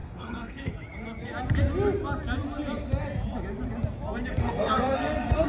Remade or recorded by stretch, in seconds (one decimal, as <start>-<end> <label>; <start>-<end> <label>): 0.0-0.7 remade; 0.7-4.4 recorded; 4.4-5.5 remade